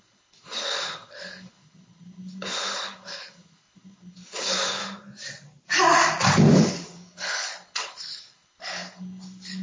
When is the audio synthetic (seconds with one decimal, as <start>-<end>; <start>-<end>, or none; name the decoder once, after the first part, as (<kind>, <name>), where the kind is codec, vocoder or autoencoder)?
0.0-4.8 (codec, HILCodec); 6.5-9.6